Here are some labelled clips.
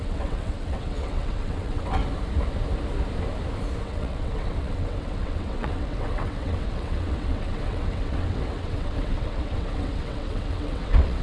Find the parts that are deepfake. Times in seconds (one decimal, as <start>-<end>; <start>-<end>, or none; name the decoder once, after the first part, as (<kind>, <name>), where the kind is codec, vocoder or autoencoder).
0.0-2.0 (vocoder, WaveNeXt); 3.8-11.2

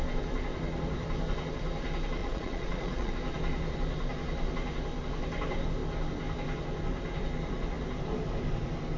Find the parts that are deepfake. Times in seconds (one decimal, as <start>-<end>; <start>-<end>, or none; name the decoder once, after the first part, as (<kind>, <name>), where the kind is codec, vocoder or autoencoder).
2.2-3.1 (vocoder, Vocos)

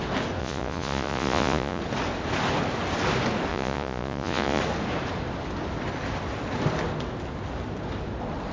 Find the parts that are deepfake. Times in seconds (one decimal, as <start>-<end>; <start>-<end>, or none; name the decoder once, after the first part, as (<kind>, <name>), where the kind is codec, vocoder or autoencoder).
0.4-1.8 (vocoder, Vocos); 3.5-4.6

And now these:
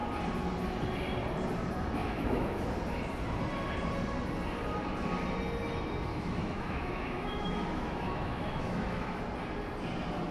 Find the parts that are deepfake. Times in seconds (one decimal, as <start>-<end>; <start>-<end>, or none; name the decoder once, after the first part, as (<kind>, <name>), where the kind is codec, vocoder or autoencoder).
2.0-2.7 (autoencoder, DAC-VAE); 6.1-9.2